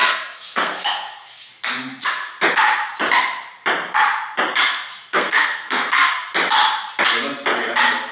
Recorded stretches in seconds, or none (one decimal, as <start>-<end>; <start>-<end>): 1.5-5.1; 6.1-8.1